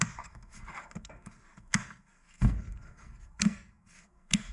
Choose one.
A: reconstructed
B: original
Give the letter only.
A